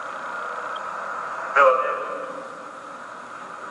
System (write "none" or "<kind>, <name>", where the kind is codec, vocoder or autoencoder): none